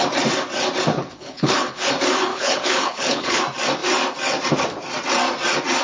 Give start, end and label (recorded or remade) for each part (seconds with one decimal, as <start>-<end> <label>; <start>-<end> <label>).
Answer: 0.0-0.9 recorded; 0.9-1.9 remade; 1.9-2.3 recorded; 2.3-3.4 remade; 3.4-5.8 recorded